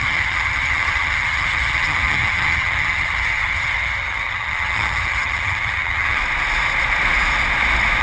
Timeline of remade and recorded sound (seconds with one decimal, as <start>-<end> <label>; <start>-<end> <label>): 0.0-6.2 remade; 6.2-8.0 recorded